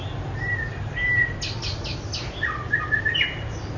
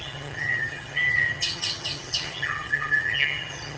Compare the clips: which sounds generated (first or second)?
second